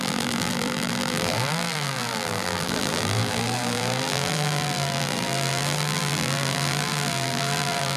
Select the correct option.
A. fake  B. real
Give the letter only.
A